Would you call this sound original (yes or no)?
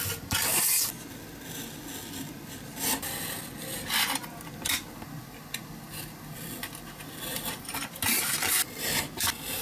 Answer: yes